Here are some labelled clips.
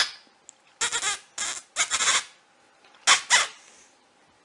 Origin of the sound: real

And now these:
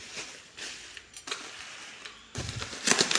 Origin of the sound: real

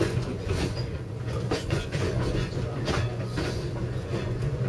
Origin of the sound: fake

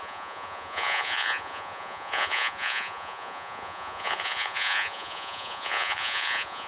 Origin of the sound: fake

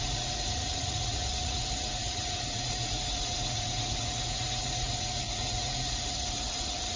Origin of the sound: fake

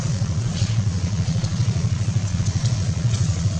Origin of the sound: fake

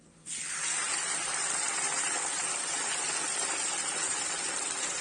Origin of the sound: real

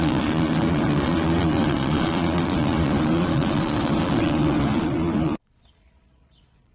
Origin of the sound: fake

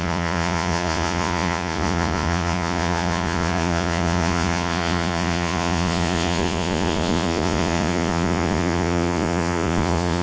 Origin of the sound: fake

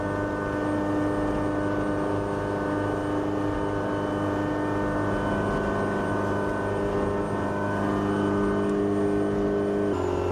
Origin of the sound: real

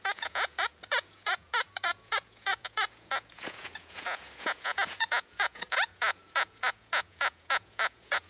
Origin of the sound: fake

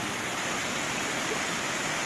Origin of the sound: real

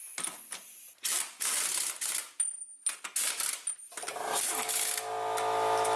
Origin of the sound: real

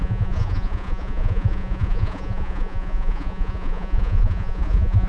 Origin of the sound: fake